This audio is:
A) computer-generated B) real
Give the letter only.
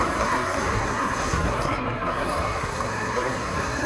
A